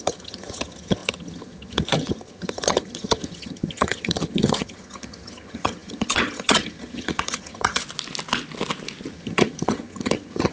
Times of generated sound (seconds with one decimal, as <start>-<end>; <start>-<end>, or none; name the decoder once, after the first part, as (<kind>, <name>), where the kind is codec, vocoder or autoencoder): 0.0-7.8 (vocoder, HiFi-GAN); 9.1-10.5